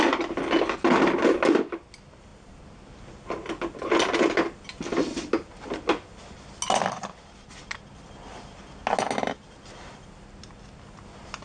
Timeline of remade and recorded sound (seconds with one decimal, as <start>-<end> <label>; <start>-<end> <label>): 0.0-11.4 recorded